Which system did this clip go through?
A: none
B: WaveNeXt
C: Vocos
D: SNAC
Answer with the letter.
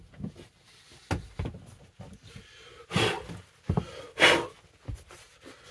A